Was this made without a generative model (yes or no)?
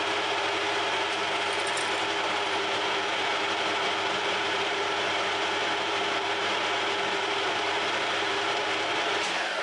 no